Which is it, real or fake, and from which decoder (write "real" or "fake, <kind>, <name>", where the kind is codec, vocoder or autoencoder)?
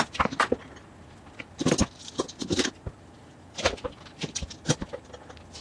real